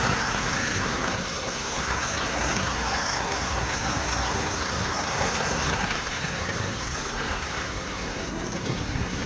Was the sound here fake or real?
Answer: fake